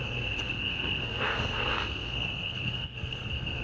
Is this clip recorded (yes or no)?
no